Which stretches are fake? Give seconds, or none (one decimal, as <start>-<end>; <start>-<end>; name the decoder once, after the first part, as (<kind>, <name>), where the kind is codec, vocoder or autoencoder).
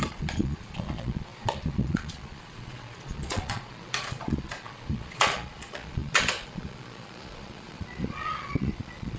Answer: 0.0-9.2 (vocoder, Vocos)